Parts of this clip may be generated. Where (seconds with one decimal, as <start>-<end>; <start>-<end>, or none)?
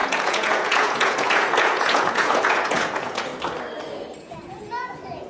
0.0-3.3; 4.2-5.3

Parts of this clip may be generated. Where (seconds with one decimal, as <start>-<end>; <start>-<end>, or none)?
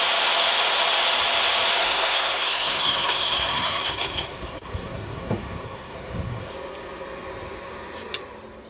1.8-6.5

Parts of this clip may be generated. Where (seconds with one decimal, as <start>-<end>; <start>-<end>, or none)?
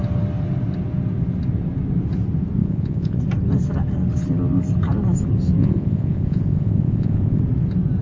2.6-3.2; 5.6-7.4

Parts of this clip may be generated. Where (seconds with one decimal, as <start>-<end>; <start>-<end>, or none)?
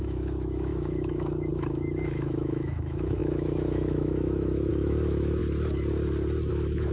0.0-5.4; 6.5-6.9